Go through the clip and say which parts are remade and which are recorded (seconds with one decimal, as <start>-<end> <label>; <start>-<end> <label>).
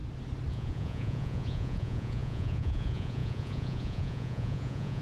0.0-0.5 recorded; 0.5-5.0 remade